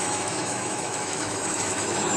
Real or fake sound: fake